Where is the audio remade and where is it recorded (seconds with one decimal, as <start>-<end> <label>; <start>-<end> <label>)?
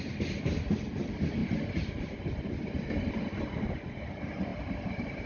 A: 0.0-5.3 recorded